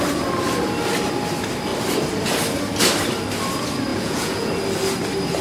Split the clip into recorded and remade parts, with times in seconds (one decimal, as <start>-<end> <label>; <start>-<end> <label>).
0.0-3.9 recorded; 3.9-4.5 remade; 4.5-5.4 recorded